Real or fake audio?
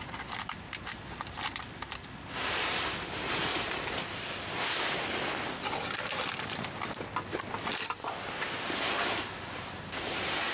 real